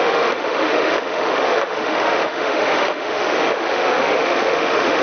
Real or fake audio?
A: fake